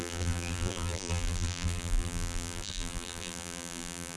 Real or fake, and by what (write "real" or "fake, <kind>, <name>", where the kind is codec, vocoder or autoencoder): fake, vocoder, BigVGAN v2